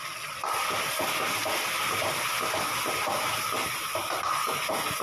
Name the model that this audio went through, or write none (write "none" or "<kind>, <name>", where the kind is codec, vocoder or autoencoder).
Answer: none